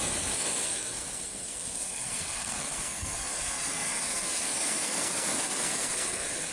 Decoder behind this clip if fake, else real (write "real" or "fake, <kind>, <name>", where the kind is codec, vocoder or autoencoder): fake, codec, SNAC